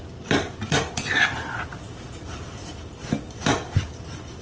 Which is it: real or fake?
real